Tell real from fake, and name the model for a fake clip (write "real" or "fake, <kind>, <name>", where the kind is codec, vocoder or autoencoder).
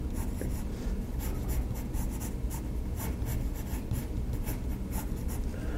real